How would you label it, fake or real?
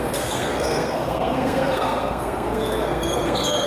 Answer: fake